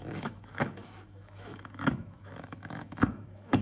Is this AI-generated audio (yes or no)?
yes